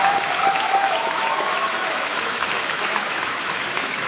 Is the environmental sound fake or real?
fake